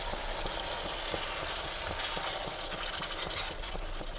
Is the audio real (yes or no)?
yes